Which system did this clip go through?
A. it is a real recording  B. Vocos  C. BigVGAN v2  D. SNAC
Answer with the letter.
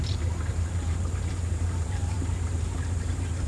C